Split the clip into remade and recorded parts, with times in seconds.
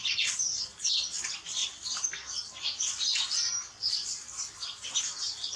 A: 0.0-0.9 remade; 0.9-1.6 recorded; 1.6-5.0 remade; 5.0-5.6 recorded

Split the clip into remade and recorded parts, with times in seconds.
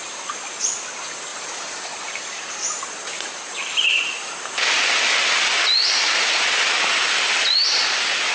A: 0.0-1.3 recorded; 1.3-2.8 remade; 2.8-8.3 recorded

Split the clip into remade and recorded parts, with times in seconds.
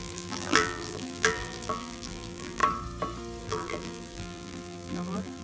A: 0.0-2.6 remade; 2.6-3.4 recorded; 3.4-5.4 remade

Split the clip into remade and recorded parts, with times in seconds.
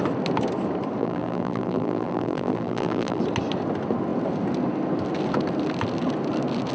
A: 0.0-1.0 recorded; 1.0-3.2 remade; 3.2-6.7 recorded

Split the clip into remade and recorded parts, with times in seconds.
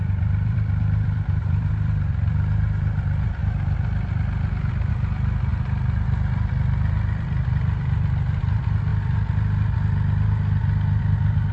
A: 0.0-8.9 remade; 8.9-11.0 recorded; 11.0-11.5 remade